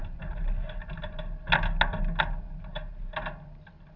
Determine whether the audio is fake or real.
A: real